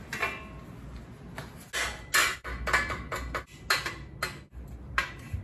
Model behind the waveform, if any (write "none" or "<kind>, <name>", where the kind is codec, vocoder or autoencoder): none